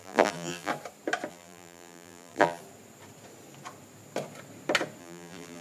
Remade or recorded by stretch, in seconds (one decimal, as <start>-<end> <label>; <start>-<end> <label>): 0.0-0.7 remade; 0.7-1.3 recorded; 1.3-2.6 remade; 2.6-5.0 recorded; 5.0-5.6 remade